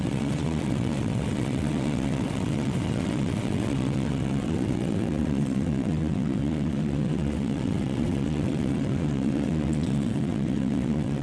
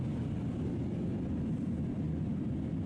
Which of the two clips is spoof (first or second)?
first